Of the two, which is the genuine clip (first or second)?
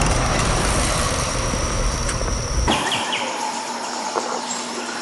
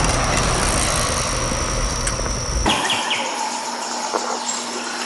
second